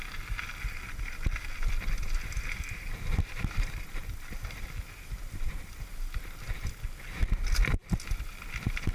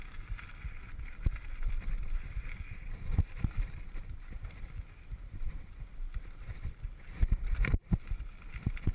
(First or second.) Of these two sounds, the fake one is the second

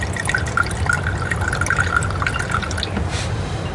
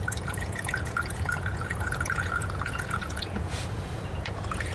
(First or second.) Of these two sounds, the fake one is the second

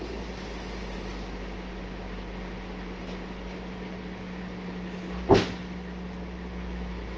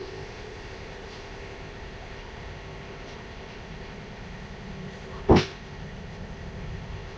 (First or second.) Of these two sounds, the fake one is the second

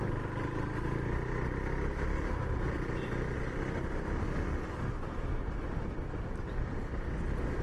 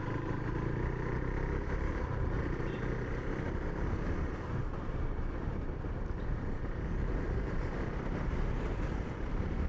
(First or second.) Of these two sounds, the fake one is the second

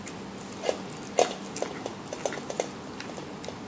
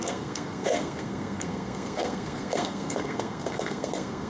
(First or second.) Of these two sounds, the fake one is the second